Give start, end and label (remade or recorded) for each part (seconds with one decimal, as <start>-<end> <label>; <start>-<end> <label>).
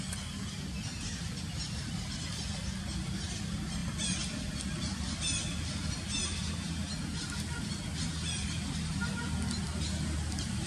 0.0-10.7 recorded